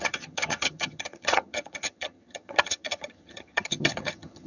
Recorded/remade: remade